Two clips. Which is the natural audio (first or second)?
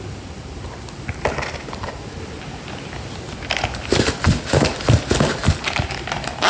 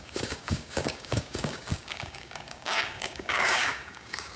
first